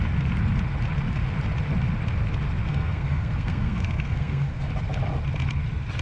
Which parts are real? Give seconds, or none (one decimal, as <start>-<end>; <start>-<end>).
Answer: 0.0-2.7; 4.7-6.0

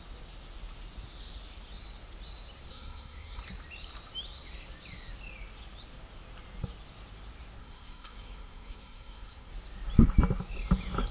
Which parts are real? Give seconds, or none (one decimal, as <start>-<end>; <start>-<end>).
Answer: 0.0-2.7; 3.4-7.6; 9.5-11.1

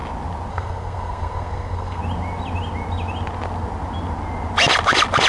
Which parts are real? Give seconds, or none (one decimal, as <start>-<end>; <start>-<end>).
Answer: 0.0-0.5; 2.0-5.3

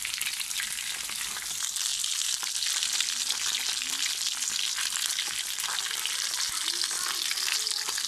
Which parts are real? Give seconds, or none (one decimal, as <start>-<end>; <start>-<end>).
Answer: 0.0-8.1

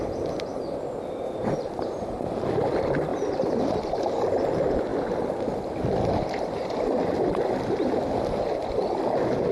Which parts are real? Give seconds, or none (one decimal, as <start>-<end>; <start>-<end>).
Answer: 0.0-9.5